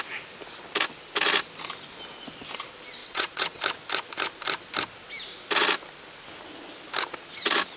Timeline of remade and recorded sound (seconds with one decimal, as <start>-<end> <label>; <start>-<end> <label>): 0.0-3.0 recorded; 3.0-3.6 remade; 3.6-7.8 recorded